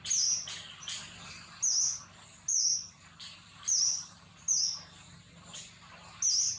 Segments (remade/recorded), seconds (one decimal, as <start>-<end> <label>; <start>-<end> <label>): 0.0-2.5 recorded; 2.5-4.2 remade; 4.2-6.6 recorded